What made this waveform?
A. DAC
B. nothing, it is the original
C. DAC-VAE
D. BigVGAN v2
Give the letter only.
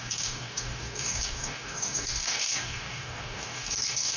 A